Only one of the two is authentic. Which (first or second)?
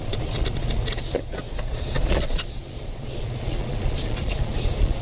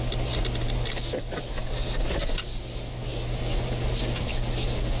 second